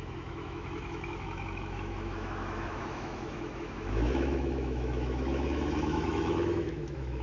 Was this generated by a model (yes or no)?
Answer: yes